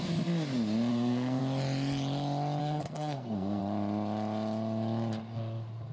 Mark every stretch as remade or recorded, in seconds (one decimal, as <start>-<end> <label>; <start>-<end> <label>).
0.0-0.9 recorded; 0.9-1.4 remade; 1.4-2.6 recorded; 2.6-3.6 remade; 3.6-5.9 recorded